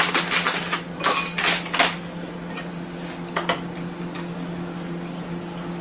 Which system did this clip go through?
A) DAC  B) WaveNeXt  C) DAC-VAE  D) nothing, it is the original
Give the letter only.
D